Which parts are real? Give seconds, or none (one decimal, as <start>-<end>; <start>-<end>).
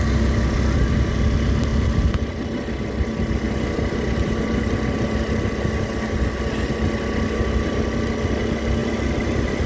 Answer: 0.0-9.7